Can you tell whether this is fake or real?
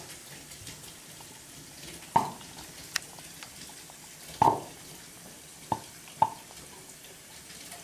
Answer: real